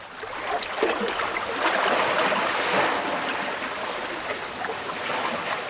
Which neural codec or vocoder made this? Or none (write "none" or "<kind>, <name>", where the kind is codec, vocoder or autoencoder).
none